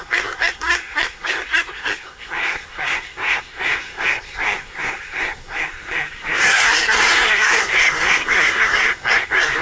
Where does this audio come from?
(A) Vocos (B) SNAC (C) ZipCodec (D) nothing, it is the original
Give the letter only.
B